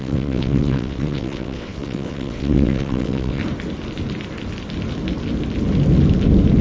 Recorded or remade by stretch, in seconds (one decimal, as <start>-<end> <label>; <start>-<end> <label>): 0.0-3.4 remade; 3.4-6.6 recorded